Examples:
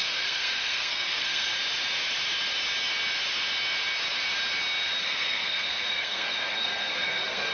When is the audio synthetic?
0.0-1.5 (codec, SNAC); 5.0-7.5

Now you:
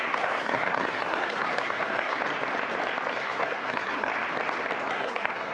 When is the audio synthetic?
0.0-2.2 (codec, SNAC); 3.1-4.1; 4.9-5.5

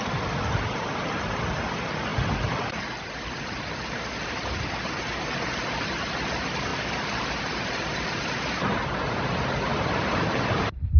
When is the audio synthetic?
9.7-11.0 (vocoder, BigVGAN v2)

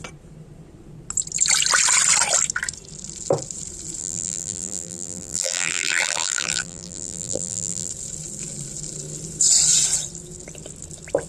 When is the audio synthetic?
4.0-7.9 (vocoder, BigVGAN v2)

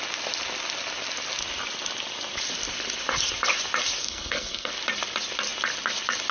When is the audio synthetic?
4.0-4.7 (codec, SNAC)

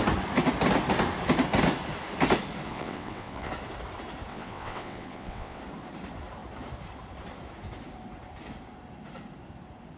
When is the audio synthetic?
2.7-3.5 (vocoder, WaveNeXt); 4.3-5.6

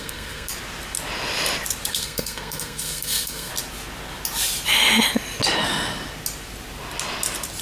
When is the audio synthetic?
0.0-0.5 (codec, SNAC); 1.9-3.5

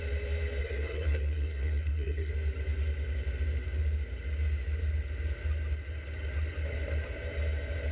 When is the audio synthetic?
0.6-2.3 (codec, SNAC)